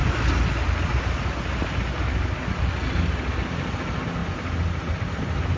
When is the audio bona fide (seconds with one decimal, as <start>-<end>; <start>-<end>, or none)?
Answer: 0.0-5.6